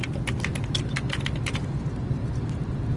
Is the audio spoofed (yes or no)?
no